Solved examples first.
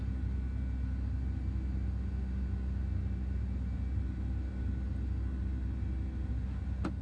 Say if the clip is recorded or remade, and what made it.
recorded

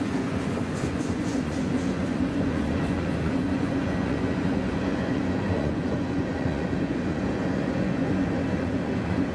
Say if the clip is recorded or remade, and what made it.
remade, vocoder, Vocos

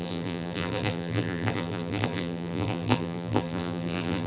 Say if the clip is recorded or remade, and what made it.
remade, vocoder, BigVGAN v2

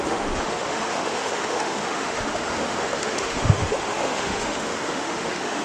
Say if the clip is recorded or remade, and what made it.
remade, autoencoder, DAC-VAE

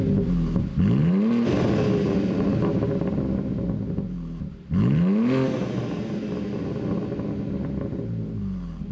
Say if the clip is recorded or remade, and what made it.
recorded